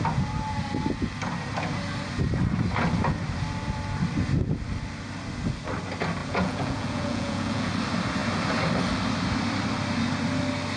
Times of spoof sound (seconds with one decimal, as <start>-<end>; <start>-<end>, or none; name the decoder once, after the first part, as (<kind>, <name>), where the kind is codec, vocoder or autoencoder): 6.2-7.7 (vocoder, Vocos)

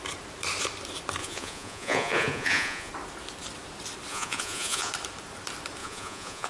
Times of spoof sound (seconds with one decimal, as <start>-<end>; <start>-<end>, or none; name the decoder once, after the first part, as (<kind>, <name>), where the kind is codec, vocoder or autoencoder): 1.2-2.9 (vocoder, Vocos); 4.1-4.9; 5.8-6.5

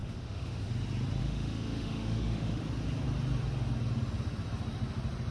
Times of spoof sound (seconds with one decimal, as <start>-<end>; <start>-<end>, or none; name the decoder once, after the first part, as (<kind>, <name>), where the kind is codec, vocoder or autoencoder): 0.0-0.7 (autoencoder, DAC-VAE); 1.2-2.6

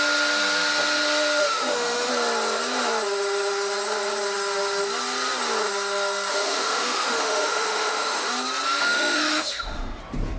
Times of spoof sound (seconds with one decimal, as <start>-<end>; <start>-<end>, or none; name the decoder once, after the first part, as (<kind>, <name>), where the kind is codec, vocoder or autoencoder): 1.4-2.1 (autoencoder, DAC-VAE); 6.3-8.3; 8.8-10.0

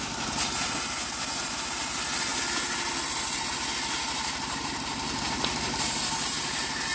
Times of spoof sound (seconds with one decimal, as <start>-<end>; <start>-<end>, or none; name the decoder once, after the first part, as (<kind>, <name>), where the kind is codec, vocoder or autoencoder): none

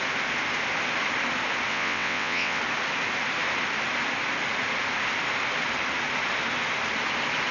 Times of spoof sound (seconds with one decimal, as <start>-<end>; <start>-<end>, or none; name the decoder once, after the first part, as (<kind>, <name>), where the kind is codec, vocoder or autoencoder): 1.7-2.6 (vocoder, WaveNeXt)